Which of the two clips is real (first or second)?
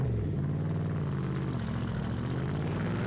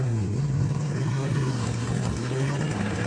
first